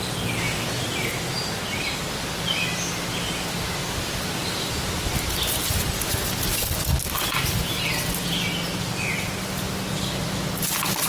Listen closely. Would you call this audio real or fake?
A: real